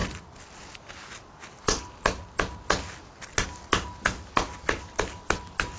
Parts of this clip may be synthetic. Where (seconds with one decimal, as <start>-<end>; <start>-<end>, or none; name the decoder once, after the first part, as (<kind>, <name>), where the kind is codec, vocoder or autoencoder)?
none

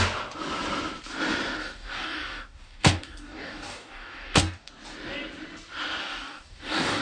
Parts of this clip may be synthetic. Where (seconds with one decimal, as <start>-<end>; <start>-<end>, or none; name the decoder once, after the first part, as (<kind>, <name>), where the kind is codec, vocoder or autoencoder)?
1.6-4.7 (codec, DAC); 6.0-7.0